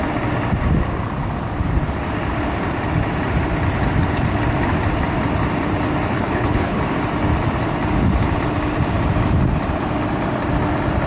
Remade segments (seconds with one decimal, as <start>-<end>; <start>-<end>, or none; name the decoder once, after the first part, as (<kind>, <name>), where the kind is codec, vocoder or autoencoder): 6.1-6.8 (codec, HILCodec)